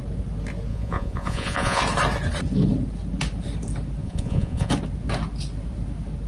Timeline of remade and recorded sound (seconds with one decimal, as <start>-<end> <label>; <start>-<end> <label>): 0.0-0.7 recorded; 0.7-1.8 remade; 1.8-4.0 recorded; 4.0-4.7 remade; 4.7-6.3 recorded